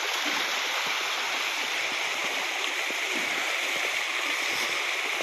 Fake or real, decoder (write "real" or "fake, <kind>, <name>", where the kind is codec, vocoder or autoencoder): real